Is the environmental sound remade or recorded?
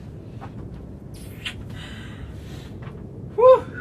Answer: recorded